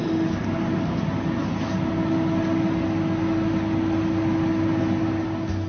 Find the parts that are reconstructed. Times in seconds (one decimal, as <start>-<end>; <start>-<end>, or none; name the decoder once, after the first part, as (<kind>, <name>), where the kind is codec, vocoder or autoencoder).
none